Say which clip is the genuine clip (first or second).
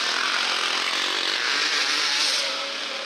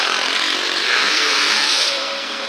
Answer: first